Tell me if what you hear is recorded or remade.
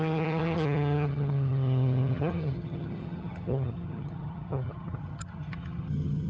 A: remade